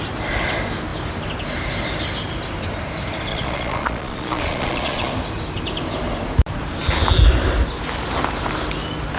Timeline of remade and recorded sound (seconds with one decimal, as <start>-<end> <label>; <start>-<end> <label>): 0.0-3.3 recorded; 3.3-5.1 remade; 5.1-9.2 recorded